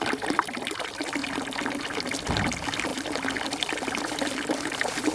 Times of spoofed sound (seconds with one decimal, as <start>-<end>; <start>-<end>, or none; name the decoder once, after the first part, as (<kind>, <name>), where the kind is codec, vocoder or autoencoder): 0.0-1.2 (vocoder, BigVGAN v2); 2.2-5.1